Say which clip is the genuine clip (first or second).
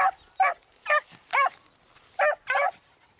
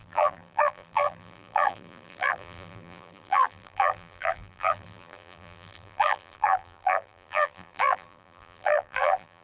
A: first